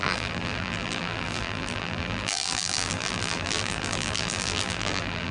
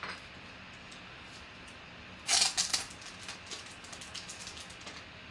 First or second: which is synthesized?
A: first